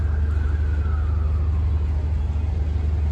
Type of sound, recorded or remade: recorded